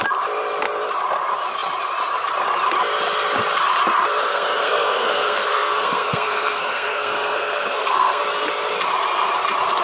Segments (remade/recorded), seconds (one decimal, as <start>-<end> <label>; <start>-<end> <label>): 0.0-4.3 recorded; 4.3-8.2 remade; 8.2-9.8 recorded